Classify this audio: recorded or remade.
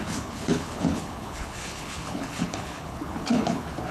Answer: remade